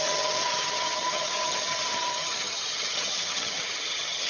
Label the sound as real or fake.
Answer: fake